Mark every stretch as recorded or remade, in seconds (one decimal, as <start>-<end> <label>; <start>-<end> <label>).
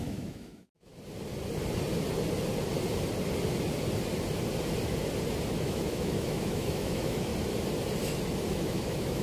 0.0-0.9 remade; 0.9-5.6 recorded; 5.6-7.3 remade; 7.3-8.5 recorded; 8.5-9.2 remade